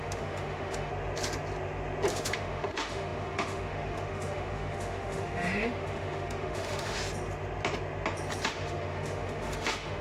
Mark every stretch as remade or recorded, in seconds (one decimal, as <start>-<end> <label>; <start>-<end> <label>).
0.0-0.9 remade; 0.9-2.1 recorded; 2.1-7.0 remade; 7.0-8.5 recorded; 8.5-10.0 remade